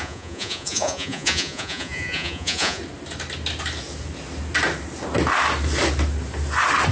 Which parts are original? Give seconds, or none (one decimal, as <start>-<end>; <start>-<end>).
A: 2.8-6.9